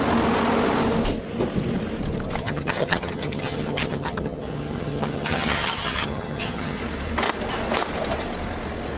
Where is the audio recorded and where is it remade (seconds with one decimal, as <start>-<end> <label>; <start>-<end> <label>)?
0.0-2.4 recorded; 2.4-6.8 remade; 6.8-9.0 recorded